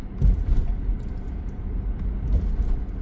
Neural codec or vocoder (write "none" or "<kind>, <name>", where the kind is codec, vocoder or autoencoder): none